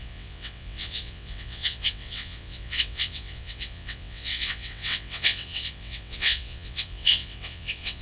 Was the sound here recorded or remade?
remade